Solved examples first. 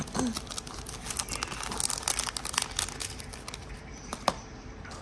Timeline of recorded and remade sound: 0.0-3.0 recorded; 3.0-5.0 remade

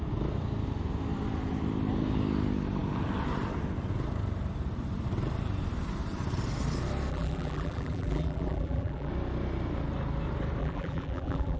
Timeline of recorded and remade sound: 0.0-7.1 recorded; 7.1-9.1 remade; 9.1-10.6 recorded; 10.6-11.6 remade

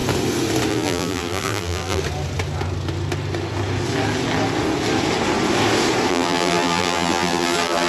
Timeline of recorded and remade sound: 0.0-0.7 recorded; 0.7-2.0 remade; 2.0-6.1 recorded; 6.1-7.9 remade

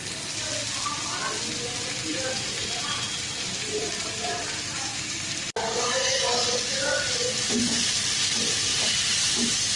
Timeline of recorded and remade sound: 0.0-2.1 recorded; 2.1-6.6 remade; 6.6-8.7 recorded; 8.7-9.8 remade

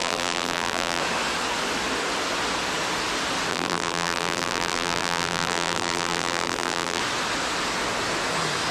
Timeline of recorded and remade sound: 0.0-1.0 remade; 1.0-3.5 recorded; 3.5-7.0 remade; 7.0-8.7 recorded

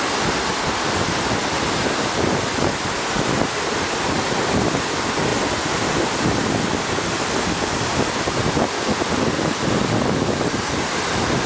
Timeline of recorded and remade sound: 0.0-11.5 recorded

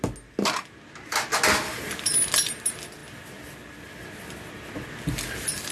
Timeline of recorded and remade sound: 0.0-5.7 recorded

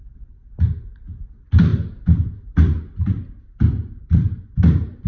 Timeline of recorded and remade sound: 0.0-0.7 remade; 0.7-1.7 recorded; 1.7-5.1 remade